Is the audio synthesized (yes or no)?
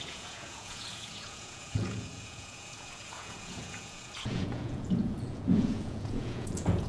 yes